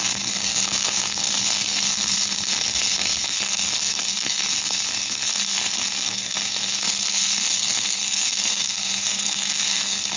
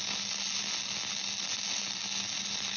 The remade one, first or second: first